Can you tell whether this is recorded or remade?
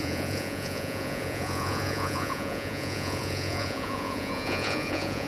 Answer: remade